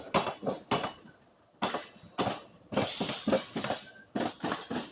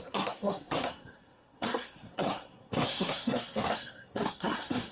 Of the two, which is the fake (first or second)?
second